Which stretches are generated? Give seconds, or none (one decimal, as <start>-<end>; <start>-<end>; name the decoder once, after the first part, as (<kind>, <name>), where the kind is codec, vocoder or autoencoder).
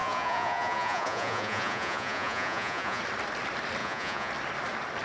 0.0-3.0 (vocoder, Vocos); 3.8-4.3